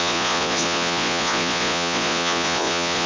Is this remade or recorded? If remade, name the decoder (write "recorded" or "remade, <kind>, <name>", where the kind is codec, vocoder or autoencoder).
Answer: remade, vocoder, Vocos